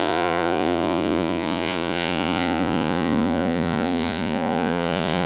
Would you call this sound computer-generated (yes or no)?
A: yes